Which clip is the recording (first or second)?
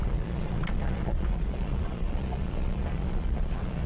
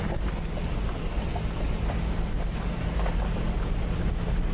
second